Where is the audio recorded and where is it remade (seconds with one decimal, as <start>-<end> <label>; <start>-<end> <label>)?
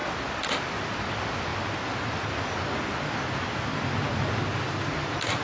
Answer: 0.0-0.7 recorded; 0.7-1.5 remade; 1.5-4.7 recorded; 4.7-5.4 remade